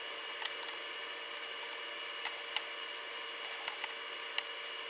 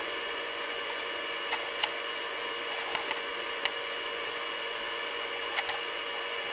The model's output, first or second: second